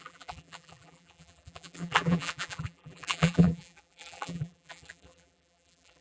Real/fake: fake